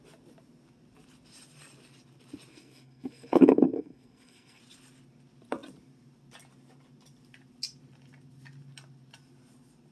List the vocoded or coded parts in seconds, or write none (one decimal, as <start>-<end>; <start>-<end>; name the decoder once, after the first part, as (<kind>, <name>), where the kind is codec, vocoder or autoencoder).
2.5-4.6 (codec, SNAC)